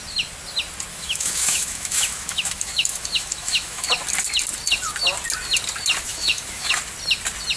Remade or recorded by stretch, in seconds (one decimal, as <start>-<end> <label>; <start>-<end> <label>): 0.0-0.9 recorded; 0.9-3.9 remade; 3.9-6.1 recorded; 6.1-6.7 remade; 6.7-7.6 recorded